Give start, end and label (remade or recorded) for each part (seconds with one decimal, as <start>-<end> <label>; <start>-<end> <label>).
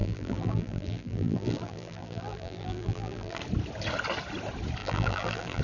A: 0.0-3.4 remade; 3.4-4.8 recorded; 4.8-5.6 remade